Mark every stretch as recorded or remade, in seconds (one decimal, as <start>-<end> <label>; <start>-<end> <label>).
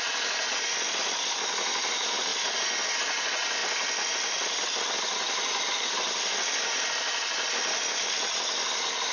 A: 0.0-3.6 recorded; 3.6-8.1 remade; 8.1-9.1 recorded